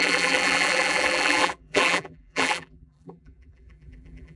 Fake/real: fake